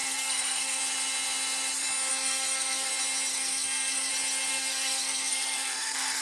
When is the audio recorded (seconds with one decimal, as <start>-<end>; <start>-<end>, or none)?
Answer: 0.8-2.1; 2.9-3.3; 4.1-4.5

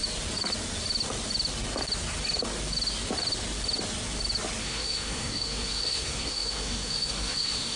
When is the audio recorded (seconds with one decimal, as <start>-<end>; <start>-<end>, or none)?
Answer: 0.0-4.6

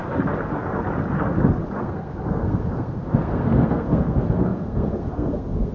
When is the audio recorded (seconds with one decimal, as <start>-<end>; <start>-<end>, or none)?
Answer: 0.0-1.7